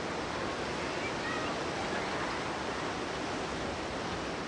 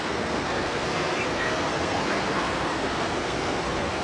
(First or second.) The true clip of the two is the first